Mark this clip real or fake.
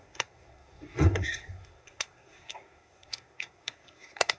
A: fake